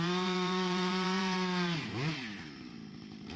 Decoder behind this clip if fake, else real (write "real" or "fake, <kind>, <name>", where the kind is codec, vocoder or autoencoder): fake, vocoder, BigVGAN v2